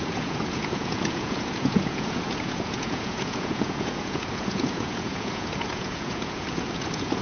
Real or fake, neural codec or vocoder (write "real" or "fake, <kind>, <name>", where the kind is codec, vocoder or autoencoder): fake, vocoder, Vocos